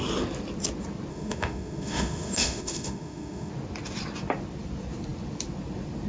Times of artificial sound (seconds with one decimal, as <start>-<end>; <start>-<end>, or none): 1.1-3.5